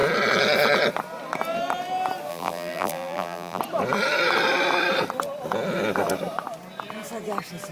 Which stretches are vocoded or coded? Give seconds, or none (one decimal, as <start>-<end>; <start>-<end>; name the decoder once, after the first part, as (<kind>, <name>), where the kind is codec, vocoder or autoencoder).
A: 2.3-3.6 (vocoder, BigVGAN v2)

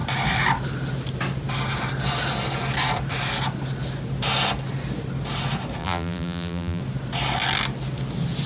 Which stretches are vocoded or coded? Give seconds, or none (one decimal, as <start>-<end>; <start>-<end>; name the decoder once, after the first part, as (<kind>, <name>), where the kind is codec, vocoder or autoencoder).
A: 5.8-6.8 (vocoder, BigVGAN v2)

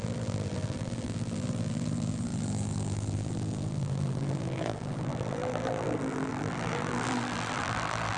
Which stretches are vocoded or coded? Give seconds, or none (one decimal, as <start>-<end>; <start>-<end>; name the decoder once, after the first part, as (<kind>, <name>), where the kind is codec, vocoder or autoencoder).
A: 0.0-8.2 (vocoder, BigVGAN v2)

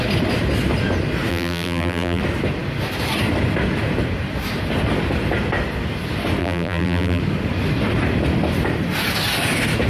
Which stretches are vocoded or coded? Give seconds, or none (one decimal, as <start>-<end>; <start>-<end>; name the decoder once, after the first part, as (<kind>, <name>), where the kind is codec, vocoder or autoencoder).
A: 1.3-2.2 (vocoder, BigVGAN v2); 6.4-7.2

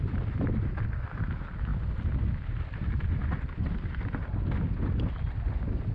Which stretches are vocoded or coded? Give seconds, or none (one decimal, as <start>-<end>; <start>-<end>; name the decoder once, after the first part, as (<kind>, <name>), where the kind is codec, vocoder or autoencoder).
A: none

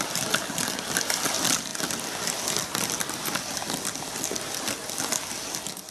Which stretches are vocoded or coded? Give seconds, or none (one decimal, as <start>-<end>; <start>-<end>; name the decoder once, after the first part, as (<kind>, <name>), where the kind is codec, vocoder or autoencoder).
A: none

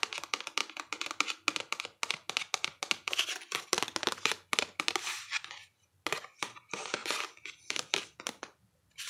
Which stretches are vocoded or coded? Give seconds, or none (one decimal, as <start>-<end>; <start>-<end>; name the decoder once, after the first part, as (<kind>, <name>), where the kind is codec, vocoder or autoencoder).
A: none